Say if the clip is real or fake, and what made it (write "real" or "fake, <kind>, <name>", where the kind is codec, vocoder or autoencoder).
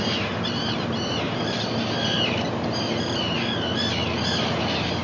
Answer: real